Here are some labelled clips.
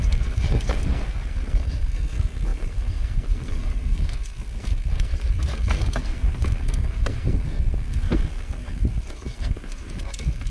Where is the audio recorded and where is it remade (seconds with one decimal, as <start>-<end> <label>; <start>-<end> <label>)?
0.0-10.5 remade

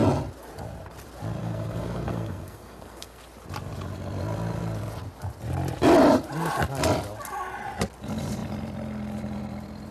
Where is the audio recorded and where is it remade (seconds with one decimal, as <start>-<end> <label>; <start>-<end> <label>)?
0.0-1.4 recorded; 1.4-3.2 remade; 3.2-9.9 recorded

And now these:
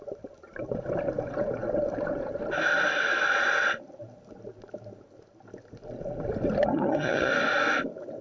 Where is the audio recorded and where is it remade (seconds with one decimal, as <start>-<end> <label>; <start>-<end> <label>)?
0.0-6.7 recorded; 6.7-7.3 remade; 7.3-8.2 recorded

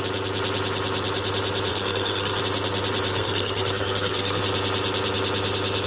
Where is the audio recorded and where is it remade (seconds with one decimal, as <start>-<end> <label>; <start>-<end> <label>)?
0.0-1.7 recorded; 1.7-2.4 remade; 2.4-3.1 recorded; 3.1-4.4 remade; 4.4-5.9 recorded

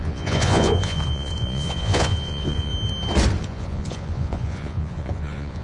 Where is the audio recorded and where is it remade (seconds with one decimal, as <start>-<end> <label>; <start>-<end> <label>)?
0.0-2.7 remade; 2.7-3.4 recorded; 3.4-5.6 remade

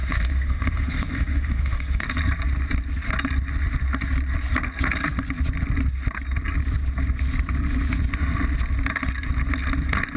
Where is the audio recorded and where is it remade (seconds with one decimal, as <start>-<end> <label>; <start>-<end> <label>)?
0.0-2.1 remade; 2.1-10.2 recorded

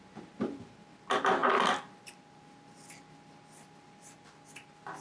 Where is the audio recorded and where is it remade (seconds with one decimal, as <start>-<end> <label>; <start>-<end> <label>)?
0.0-5.0 recorded

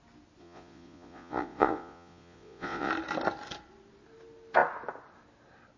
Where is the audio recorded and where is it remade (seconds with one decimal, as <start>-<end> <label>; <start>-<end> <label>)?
0.0-0.4 recorded; 0.4-2.9 remade; 2.9-5.8 recorded